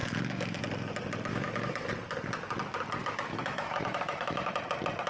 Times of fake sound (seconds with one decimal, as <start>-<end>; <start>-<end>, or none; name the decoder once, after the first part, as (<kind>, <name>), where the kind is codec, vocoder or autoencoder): 0.0-0.6 (autoencoder, DAC-VAE); 1.3-1.9; 3.0-4.5